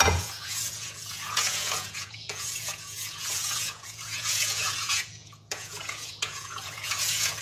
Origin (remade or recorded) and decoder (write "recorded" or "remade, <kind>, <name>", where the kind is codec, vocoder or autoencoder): remade, vocoder, Vocos